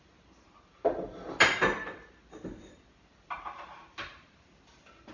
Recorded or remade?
recorded